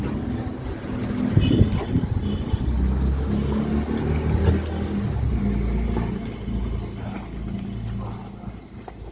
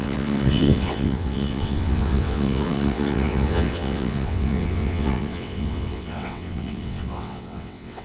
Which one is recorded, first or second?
first